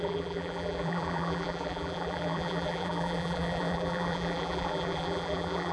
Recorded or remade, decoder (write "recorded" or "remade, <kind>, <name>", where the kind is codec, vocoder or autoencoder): remade, vocoder, BigVGAN v2